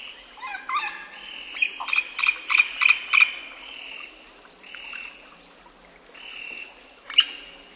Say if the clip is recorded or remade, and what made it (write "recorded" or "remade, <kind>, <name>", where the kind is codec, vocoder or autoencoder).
recorded